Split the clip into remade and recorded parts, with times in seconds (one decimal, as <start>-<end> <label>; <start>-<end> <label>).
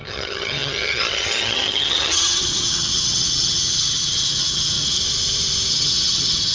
0.0-5.0 remade; 5.0-5.7 recorded; 5.7-6.5 remade